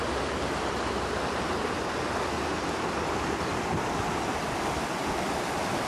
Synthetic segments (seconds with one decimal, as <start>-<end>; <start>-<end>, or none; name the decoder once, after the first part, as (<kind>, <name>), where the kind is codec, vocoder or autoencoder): none